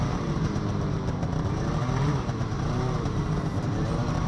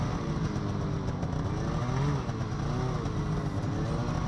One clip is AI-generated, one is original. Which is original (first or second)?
second